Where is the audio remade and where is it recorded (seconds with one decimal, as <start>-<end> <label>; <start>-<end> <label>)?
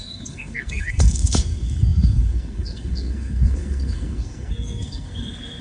0.0-5.6 remade